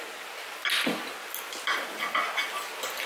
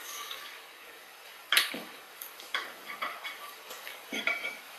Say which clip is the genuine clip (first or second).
first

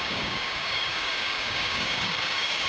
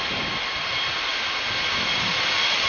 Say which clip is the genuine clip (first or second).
second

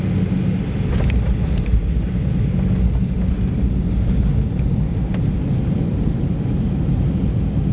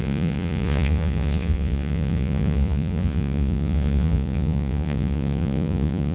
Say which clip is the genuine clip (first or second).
first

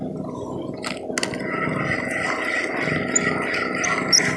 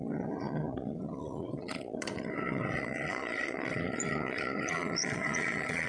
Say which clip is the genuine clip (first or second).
first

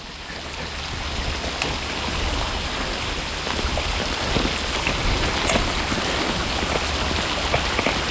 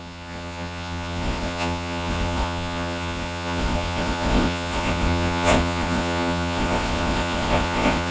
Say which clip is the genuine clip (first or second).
first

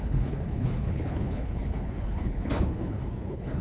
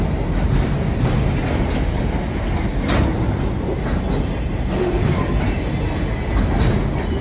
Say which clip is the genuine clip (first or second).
second